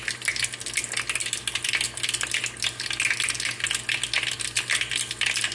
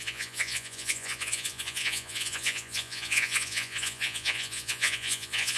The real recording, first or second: first